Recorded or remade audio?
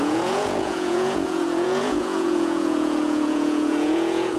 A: remade